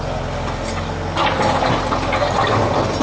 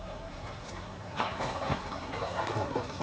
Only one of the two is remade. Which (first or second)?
second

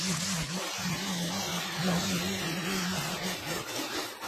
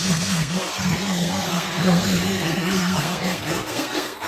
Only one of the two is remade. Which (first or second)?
second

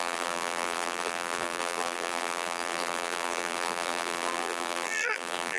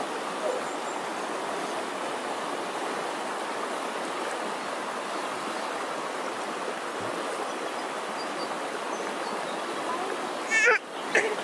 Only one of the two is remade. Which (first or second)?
first